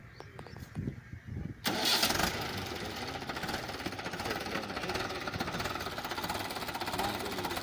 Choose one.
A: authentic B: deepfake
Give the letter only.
A